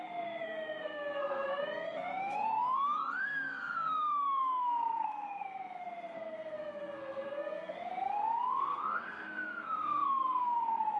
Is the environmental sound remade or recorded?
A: remade